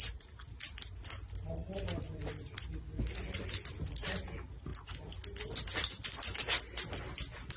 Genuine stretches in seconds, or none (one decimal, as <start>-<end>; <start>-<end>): 0.0-7.6